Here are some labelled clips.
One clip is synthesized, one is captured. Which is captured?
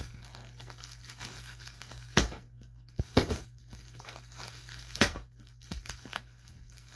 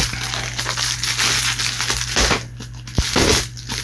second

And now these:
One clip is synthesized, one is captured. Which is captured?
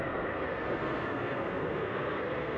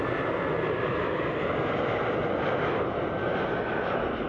second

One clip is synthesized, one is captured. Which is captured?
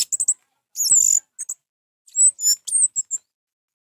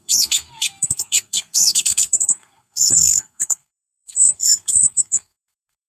first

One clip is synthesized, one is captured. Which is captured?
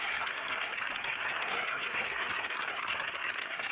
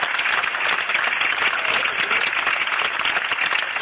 second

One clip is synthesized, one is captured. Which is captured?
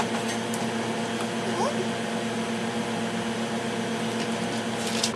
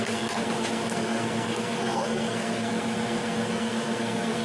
first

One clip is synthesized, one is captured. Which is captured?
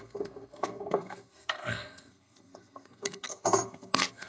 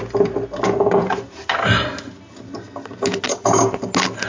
second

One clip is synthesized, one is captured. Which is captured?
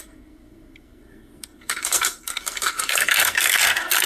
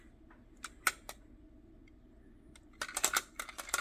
second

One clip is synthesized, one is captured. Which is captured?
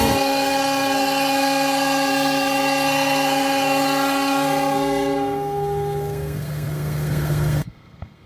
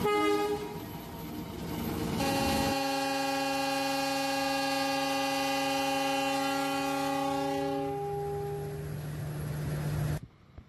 second